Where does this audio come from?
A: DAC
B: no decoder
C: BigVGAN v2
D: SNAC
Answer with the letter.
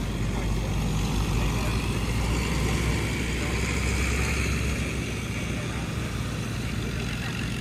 B